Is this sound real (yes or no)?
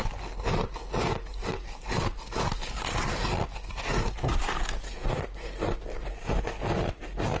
yes